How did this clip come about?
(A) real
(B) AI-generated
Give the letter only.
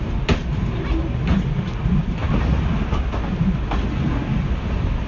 A